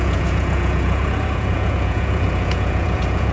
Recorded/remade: remade